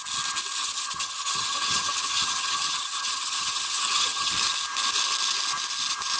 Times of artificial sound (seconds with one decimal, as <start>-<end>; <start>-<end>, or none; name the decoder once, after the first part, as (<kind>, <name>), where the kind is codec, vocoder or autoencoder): 0.6-4.3 (vocoder, HiFi-GAN)